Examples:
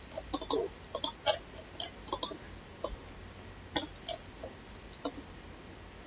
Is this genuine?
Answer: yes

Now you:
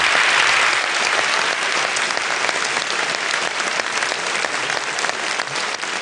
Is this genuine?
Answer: yes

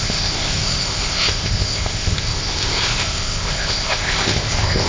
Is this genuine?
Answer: no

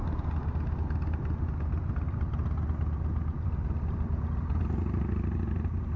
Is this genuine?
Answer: yes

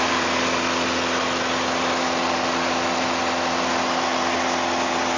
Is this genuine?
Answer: yes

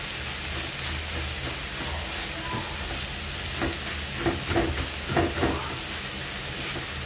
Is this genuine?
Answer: yes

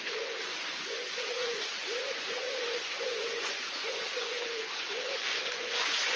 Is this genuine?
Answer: no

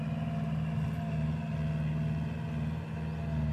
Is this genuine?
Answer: yes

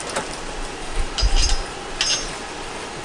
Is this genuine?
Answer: yes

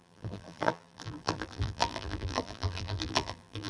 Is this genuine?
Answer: no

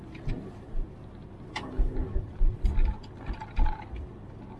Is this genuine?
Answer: yes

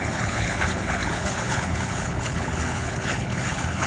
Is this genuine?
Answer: no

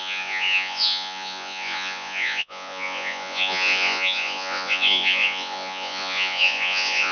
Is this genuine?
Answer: no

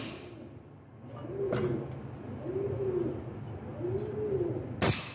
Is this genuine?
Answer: yes